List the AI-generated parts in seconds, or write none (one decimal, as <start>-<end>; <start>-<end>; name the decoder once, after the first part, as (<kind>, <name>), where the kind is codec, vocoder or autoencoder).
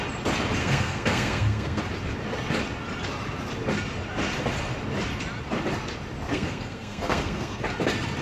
0.6-1.8 (codec, SNAC); 6.3-7.6